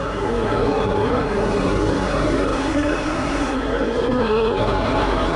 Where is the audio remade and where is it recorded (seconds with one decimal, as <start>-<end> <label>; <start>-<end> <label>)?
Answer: 0.0-5.4 remade